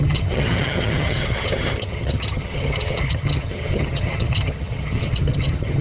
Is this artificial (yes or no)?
yes